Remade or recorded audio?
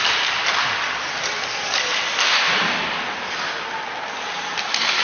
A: recorded